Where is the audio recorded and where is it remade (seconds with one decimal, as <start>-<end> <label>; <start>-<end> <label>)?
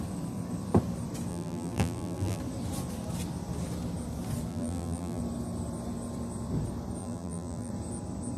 0.0-1.3 recorded; 1.3-2.4 remade; 2.4-4.5 recorded; 4.5-5.2 remade; 5.2-7.0 recorded; 7.0-7.7 remade; 7.7-8.4 recorded